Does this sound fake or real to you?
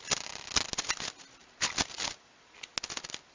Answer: real